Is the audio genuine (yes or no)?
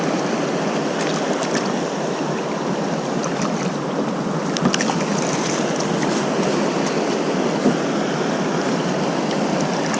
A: yes